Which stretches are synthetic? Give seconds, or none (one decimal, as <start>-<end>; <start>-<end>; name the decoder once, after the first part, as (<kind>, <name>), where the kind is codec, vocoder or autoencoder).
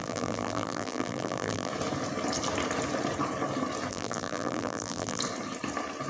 0.0-1.7 (vocoder, BigVGAN v2); 3.9-5.2